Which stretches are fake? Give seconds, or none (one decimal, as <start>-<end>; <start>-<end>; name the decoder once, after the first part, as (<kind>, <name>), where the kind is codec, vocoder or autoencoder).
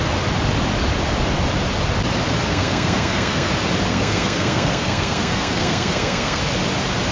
2.5-3.5 (codec, SNAC); 3.9-6.4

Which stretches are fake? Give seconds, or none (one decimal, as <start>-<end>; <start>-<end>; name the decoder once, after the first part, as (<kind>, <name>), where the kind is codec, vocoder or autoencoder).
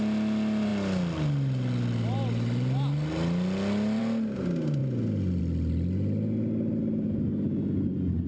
none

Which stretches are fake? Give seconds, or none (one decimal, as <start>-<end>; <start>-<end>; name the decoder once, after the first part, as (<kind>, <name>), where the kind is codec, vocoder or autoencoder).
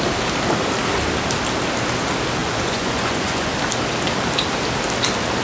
2.4-3.5 (vocoder, Vocos)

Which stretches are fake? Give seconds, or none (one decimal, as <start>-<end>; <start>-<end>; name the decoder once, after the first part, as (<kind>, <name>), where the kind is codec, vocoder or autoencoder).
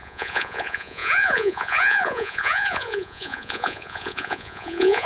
0.0-5.1 (vocoder, Vocos)